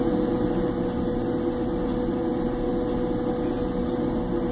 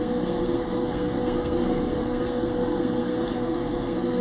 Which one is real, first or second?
first